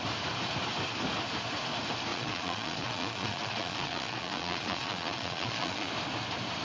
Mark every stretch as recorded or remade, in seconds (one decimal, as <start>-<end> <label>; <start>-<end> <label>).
0.0-2.1 recorded; 2.1-5.9 remade; 5.9-6.6 recorded